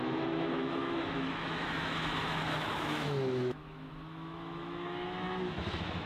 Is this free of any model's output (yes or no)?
no